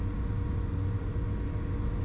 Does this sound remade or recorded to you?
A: recorded